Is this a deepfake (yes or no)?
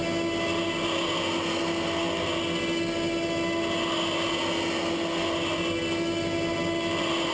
no